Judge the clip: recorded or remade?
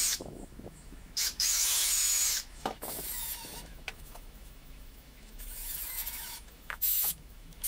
remade